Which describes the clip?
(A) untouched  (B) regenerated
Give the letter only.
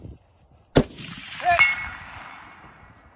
A